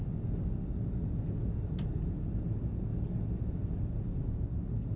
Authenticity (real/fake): real